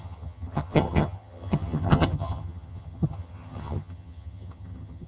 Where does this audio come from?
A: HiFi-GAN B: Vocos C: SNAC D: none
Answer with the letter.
A